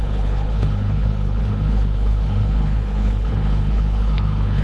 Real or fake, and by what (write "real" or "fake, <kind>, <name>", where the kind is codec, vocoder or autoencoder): fake, codec, HILCodec